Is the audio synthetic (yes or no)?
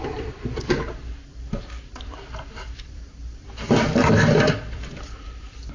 yes